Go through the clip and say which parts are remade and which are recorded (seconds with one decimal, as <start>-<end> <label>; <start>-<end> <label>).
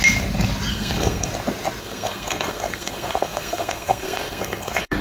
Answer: 0.0-0.7 recorded; 0.7-1.3 remade; 1.3-1.8 recorded; 1.8-5.0 remade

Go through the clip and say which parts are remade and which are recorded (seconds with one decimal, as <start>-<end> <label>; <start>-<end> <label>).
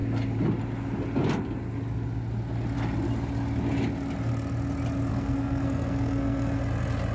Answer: 0.0-5.1 recorded; 5.1-6.6 remade; 6.6-7.1 recorded